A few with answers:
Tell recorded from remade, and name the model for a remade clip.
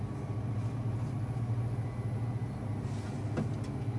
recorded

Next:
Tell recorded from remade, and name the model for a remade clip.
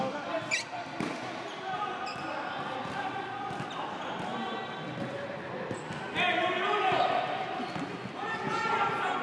recorded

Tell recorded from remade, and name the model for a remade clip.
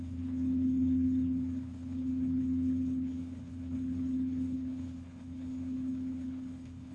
remade, codec, HILCodec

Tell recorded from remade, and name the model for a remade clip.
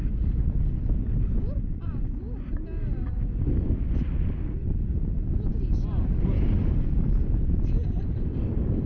recorded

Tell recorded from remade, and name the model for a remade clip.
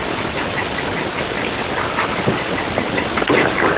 recorded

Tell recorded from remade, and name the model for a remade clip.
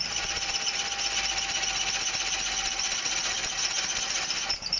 recorded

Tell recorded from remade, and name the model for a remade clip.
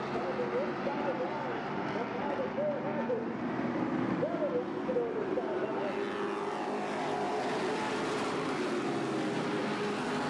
recorded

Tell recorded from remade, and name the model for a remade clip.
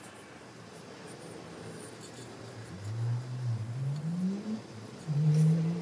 recorded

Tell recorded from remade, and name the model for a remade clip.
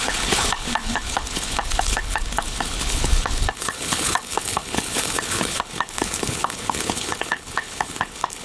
remade, codec, HILCodec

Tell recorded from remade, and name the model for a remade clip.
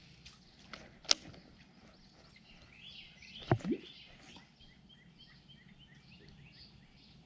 recorded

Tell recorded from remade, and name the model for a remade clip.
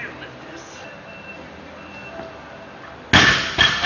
recorded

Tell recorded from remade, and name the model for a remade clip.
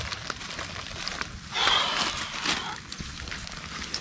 recorded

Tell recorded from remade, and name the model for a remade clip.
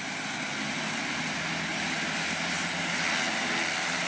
recorded